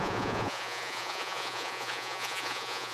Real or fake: fake